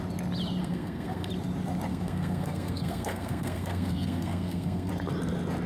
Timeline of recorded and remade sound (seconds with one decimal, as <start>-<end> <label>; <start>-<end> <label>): 0.0-0.6 recorded; 0.6-1.3 remade; 1.3-1.9 recorded; 1.9-4.9 remade; 4.9-5.7 recorded

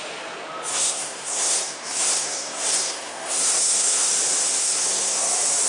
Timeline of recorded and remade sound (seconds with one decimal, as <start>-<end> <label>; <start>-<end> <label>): 0.0-0.7 recorded; 0.7-4.1 remade; 4.1-4.6 recorded; 4.6-5.3 remade; 5.3-5.7 recorded

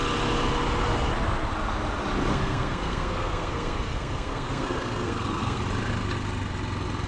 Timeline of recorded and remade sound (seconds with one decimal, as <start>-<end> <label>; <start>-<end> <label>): 0.0-2.3 recorded; 2.3-5.6 remade; 5.6-7.1 recorded

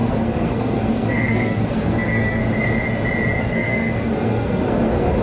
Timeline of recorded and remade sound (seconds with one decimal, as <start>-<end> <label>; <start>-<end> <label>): 0.0-2.4 remade; 2.4-3.4 recorded; 3.4-5.2 remade

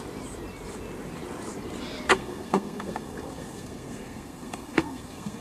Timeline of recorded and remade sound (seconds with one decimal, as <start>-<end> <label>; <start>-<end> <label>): 0.0-2.1 recorded; 2.1-5.4 remade

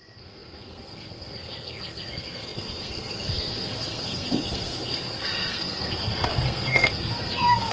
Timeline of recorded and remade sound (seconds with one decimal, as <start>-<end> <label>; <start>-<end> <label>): 0.0-7.7 remade

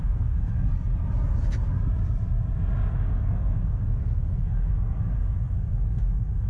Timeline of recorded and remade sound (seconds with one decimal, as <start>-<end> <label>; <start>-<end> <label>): 0.0-0.7 remade; 0.7-2.9 recorded; 2.9-6.5 remade